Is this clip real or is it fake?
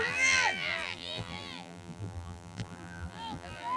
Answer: fake